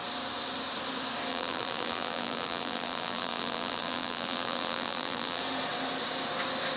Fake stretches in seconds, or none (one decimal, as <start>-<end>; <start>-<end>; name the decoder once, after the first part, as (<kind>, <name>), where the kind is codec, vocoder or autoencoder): 1.3-5.4 (vocoder, BigVGAN v2)